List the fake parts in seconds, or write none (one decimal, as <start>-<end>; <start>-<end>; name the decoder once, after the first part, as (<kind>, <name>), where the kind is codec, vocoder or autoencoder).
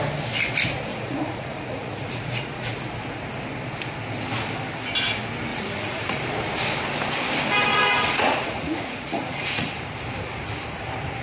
0.9-2.7 (vocoder, Vocos); 5.5-6.2; 7.7-9.7